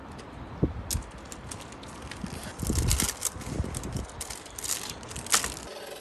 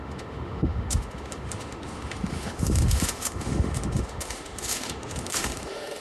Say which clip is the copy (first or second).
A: second